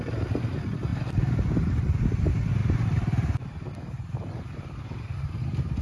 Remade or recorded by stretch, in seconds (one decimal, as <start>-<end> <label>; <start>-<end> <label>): 0.0-0.9 recorded; 0.9-2.0 remade; 2.0-5.8 recorded

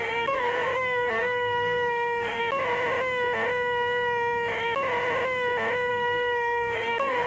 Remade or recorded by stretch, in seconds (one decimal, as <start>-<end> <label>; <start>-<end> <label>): 0.0-2.4 remade; 2.4-5.9 recorded; 5.9-7.3 remade

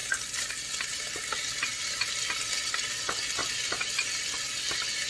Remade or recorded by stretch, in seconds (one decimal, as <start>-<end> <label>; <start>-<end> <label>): 0.0-5.1 recorded

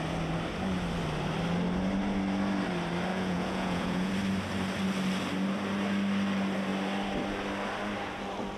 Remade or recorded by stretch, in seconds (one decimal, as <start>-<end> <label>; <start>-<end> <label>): 0.0-3.1 recorded; 3.1-4.1 remade; 4.1-8.6 recorded

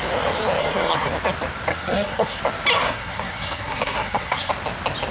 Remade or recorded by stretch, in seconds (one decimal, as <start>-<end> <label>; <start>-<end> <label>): 0.0-0.6 recorded; 0.6-1.1 remade; 1.1-1.7 recorded; 1.7-2.4 remade; 2.4-2.8 recorded; 2.8-4.5 remade; 4.5-5.1 recorded

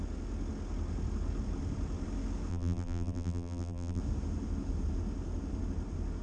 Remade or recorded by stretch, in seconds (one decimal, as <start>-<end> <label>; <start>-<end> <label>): 0.0-2.5 recorded; 2.5-4.0 remade; 4.0-6.2 recorded

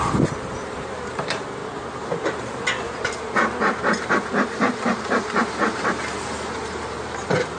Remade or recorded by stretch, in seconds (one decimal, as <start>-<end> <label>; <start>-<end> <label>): 0.0-7.6 remade

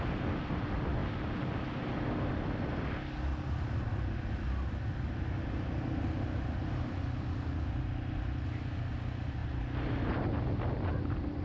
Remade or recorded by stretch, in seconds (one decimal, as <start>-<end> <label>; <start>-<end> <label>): 0.0-11.4 recorded